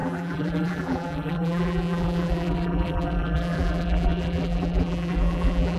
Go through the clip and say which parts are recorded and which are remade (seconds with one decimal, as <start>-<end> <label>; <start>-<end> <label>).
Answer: 0.0-5.8 remade